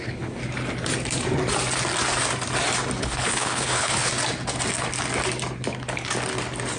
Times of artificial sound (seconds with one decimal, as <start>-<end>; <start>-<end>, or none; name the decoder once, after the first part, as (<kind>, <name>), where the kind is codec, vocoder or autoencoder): 0.0-0.4 (codec, HILCodec); 3.0-4.1